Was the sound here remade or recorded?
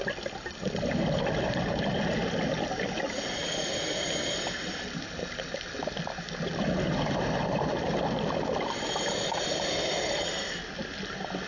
recorded